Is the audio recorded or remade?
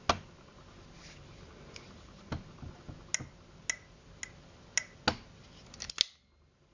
recorded